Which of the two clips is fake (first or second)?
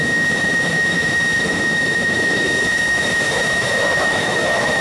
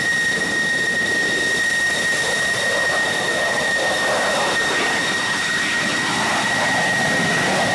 first